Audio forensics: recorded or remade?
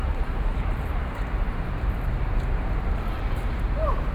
remade